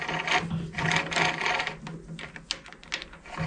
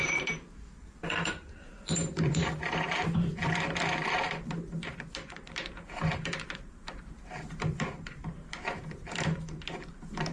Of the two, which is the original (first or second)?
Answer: first